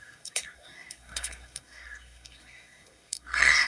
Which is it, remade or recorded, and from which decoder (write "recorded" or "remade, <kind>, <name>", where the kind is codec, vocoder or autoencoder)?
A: remade, codec, SNAC